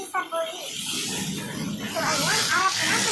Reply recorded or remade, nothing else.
recorded